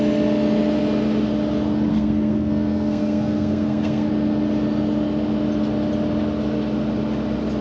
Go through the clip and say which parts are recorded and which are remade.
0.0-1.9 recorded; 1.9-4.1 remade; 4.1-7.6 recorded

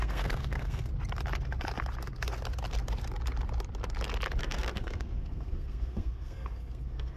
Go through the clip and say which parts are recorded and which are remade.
0.0-0.9 remade; 0.9-4.4 recorded; 4.4-7.2 remade